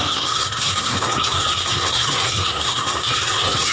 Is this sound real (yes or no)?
no